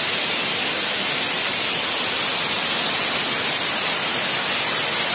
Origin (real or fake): real